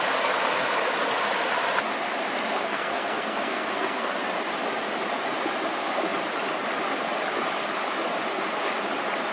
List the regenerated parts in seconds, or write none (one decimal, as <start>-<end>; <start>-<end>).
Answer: 2.5-4.1